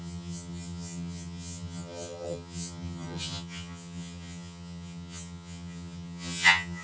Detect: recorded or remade remade